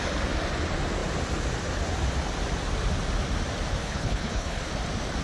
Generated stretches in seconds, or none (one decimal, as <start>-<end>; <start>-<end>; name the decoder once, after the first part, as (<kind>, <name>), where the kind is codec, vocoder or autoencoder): 3.8-4.7 (codec, HILCodec)